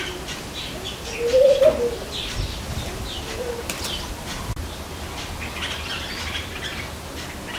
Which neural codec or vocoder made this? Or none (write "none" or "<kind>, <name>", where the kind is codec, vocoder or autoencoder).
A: none